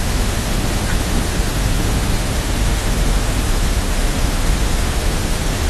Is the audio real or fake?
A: fake